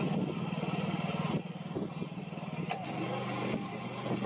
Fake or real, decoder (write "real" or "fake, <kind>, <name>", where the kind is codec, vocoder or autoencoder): real